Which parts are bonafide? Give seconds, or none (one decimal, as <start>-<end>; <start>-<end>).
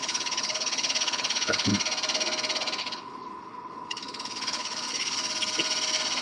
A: 1.7-2.8; 5.2-6.2